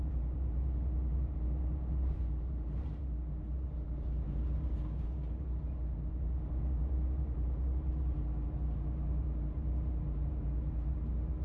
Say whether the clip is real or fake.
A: fake